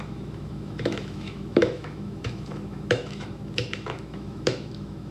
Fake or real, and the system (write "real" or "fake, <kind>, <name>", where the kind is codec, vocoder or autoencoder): fake, autoencoder, DAC-VAE